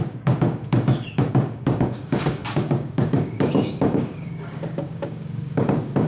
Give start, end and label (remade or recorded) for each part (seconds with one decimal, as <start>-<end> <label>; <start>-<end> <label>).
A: 0.0-6.1 remade